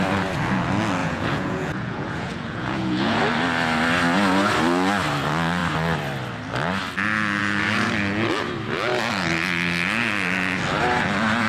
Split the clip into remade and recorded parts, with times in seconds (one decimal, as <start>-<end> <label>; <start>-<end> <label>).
0.0-1.0 recorded; 1.0-3.2 remade; 3.2-11.5 recorded